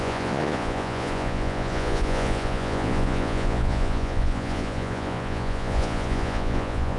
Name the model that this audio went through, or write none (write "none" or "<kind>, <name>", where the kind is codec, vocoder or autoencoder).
vocoder, Vocos